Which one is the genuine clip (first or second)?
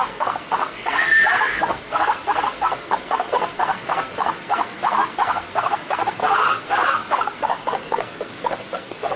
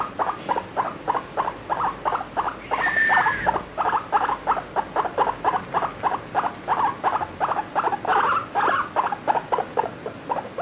second